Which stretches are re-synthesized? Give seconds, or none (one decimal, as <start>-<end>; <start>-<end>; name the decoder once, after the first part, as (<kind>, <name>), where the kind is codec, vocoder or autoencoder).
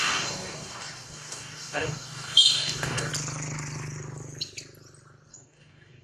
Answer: 0.0-3.1 (codec, DAC); 5.3-6.0